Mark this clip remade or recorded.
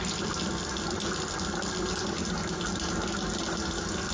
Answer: recorded